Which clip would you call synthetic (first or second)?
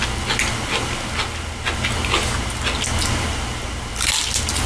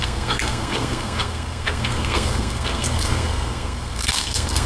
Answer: second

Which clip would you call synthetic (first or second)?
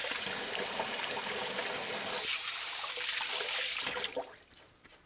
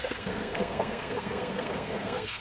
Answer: second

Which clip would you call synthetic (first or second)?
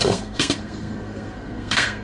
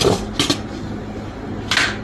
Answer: first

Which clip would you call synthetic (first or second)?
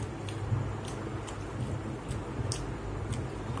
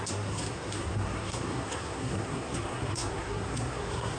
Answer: second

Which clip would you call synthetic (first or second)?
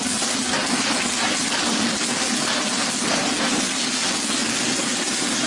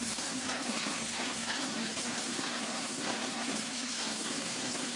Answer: second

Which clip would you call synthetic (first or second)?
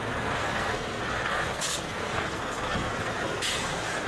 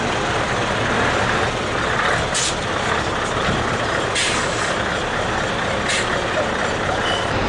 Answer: first